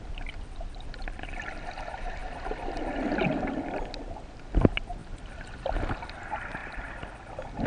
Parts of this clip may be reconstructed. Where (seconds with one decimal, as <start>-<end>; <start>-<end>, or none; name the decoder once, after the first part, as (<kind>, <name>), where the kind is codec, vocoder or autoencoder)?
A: none